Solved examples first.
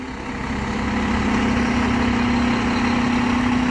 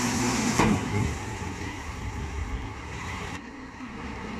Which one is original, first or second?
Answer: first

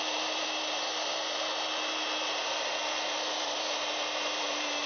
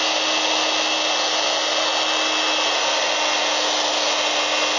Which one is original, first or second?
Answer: second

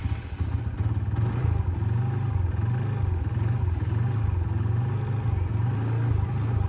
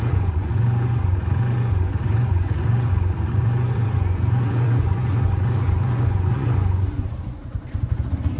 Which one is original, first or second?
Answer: first